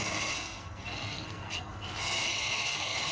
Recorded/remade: remade